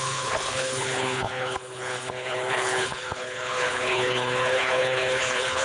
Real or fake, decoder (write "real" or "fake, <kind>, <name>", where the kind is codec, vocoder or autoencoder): fake, codec, HILCodec